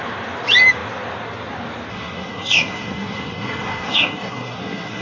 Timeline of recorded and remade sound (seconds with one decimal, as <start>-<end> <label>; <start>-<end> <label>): 0.0-1.9 recorded; 1.9-5.0 remade

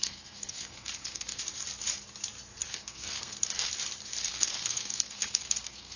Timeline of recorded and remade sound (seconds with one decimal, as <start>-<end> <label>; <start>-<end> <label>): 0.0-1.4 remade; 1.4-2.6 recorded; 2.6-3.7 remade; 3.7-4.2 recorded; 4.2-6.0 remade

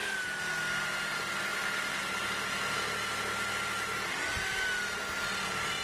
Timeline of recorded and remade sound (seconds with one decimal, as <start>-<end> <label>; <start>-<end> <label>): 0.0-5.8 recorded

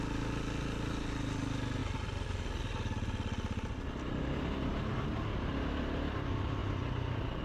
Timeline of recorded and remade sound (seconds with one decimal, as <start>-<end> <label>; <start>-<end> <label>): 0.0-7.4 recorded

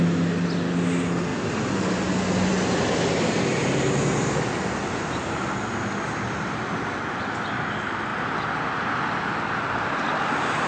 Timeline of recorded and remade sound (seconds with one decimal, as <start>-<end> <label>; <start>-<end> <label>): 0.0-10.7 recorded